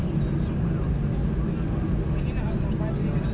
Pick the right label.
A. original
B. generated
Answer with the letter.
A